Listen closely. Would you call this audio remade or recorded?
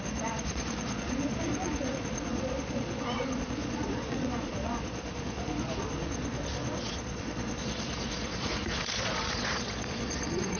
remade